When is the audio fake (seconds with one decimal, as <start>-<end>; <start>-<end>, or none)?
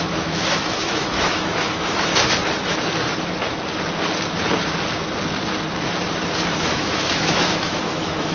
0.0-2.1; 6.6-8.3